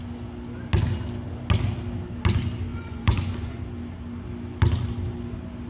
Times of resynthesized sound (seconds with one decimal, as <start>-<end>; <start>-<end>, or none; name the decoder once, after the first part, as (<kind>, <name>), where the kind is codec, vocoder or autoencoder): 2.7-3.6 (vocoder, Vocos)